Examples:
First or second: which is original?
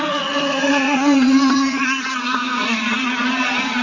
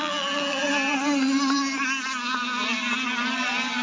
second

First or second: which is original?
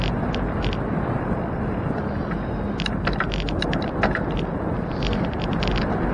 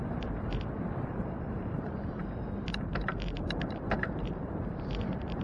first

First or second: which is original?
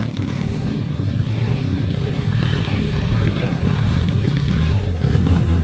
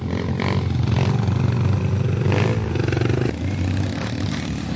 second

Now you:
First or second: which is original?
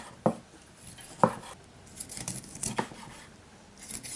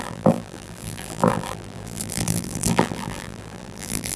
first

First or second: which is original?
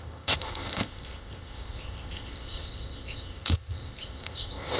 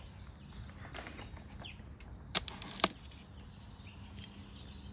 second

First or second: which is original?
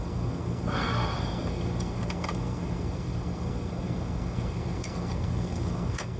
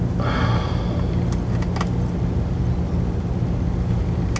second